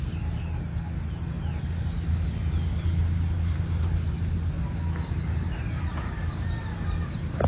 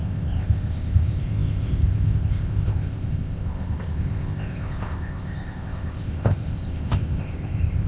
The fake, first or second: second